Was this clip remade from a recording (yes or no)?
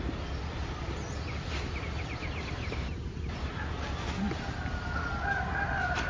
no